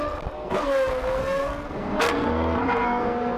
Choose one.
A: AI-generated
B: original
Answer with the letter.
A